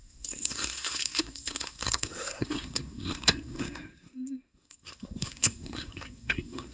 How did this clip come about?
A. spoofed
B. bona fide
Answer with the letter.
A